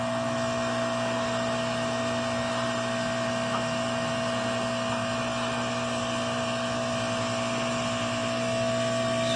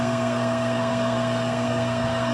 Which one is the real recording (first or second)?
first